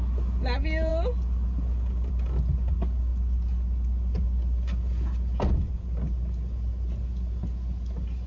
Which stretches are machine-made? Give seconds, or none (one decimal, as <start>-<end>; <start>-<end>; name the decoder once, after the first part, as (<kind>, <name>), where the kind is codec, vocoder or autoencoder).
none